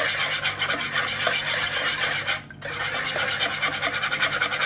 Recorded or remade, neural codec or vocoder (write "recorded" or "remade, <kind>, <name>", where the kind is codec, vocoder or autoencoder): recorded